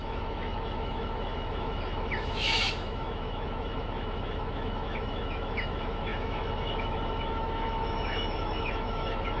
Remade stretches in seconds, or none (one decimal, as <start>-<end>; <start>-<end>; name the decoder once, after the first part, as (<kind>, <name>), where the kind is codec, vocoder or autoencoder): 0.0-9.4 (autoencoder, DAC-VAE)